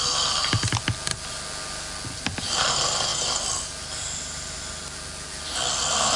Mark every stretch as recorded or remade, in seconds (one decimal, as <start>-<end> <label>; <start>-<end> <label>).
0.0-6.2 recorded